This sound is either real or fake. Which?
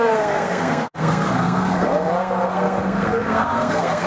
fake